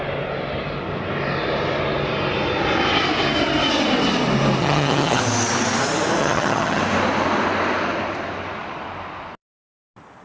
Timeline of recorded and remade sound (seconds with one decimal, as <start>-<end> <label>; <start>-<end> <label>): 0.0-4.6 recorded; 4.6-5.2 remade; 5.2-6.2 recorded; 6.2-6.8 remade; 6.8-10.2 recorded